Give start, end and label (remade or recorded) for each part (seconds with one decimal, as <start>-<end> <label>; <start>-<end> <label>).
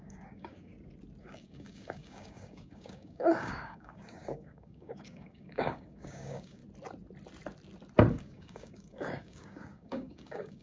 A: 0.0-0.7 remade; 0.7-1.2 recorded; 1.2-6.6 remade; 6.6-8.1 recorded; 8.1-10.6 remade